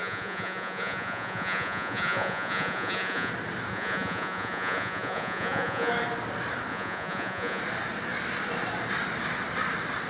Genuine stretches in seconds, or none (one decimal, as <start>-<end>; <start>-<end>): 3.3-3.7; 5.9-6.7; 7.6-10.1